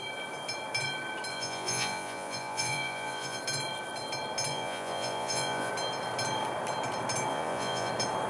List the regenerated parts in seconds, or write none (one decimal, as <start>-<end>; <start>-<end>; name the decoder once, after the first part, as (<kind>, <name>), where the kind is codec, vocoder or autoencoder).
1.3-3.4 (vocoder, Vocos); 4.5-5.7; 7.3-7.9

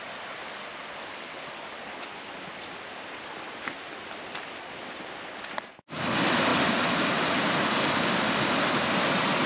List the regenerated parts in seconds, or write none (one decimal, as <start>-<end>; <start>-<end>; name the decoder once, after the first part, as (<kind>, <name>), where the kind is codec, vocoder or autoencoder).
none

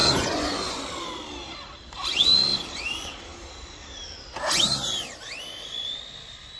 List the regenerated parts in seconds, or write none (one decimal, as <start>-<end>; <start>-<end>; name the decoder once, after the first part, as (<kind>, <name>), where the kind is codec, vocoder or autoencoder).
0.0-0.8 (vocoder, Vocos)